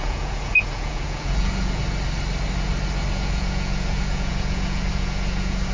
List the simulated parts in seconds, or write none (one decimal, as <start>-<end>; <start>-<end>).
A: 0.0-1.8; 3.1-5.7